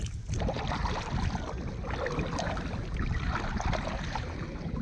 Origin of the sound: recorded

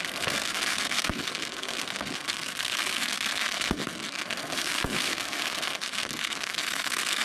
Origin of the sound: remade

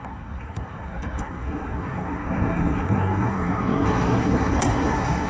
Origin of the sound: remade